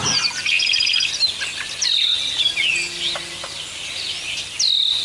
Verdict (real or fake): real